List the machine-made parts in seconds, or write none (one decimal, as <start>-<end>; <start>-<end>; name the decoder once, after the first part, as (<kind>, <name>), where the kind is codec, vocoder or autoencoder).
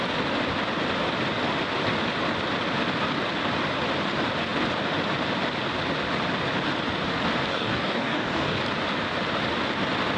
7.5-8.6 (codec, DAC)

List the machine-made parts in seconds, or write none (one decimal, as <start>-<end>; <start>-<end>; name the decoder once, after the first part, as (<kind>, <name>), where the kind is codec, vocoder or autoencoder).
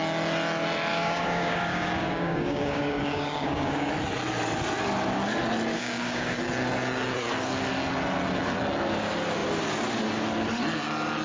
0.9-3.9 (codec, DAC); 5.7-6.4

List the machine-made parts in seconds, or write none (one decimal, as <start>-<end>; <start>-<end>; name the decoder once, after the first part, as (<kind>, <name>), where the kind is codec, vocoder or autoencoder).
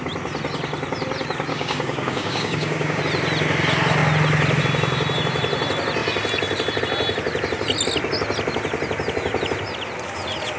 1.5-3.0 (codec, DAC)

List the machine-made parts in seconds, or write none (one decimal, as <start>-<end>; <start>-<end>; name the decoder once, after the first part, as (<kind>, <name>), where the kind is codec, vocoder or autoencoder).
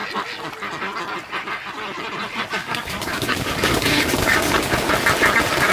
2.6-4.9 (codec, DAC)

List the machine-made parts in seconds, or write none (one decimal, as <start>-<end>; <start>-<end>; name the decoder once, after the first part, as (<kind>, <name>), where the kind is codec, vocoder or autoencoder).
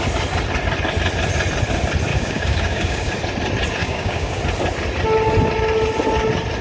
2.1-3.1 (codec, DAC); 3.8-4.4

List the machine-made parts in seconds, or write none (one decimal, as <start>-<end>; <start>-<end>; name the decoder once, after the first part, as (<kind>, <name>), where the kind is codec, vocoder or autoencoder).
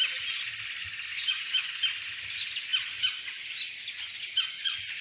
1.1-1.8 (codec, DAC)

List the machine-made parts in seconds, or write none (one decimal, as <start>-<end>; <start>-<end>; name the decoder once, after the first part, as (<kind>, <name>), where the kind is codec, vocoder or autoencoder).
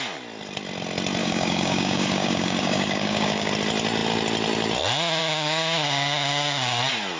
1.2-3.5 (codec, DAC); 5.2-6.8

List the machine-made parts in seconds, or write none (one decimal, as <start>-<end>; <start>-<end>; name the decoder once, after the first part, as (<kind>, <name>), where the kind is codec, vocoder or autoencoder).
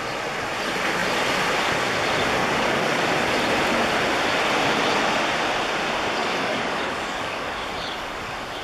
2.4-3.1 (codec, DAC); 6.2-8.6